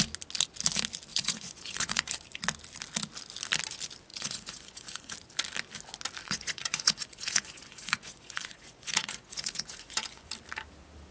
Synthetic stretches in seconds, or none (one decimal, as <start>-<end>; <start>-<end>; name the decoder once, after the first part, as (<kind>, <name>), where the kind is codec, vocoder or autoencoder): 1.1-2.1 (vocoder, Vocos); 4.1-5.1; 6.2-10.3

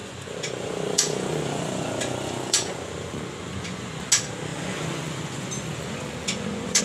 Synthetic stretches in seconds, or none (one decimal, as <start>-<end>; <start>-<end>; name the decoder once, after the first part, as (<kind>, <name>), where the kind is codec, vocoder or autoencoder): 0.0-4.1 (vocoder, Vocos); 4.5-6.8

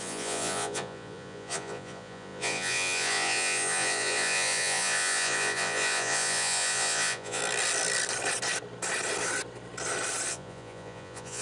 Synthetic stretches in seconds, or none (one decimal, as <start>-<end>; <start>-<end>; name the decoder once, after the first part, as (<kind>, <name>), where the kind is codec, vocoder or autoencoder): 0.0-7.4 (vocoder, Vocos); 10.3-11.4

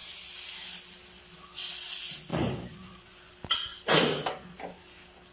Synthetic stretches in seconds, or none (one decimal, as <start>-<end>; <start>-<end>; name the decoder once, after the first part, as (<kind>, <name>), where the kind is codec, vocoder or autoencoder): 2.3-3.3 (vocoder, Vocos)